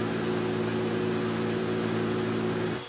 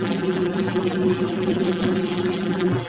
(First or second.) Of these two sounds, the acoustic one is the first